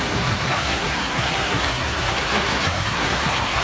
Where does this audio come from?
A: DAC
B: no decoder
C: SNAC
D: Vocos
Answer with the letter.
C